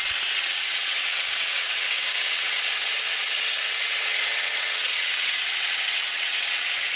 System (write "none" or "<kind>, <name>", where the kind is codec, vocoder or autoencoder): vocoder, WaveNeXt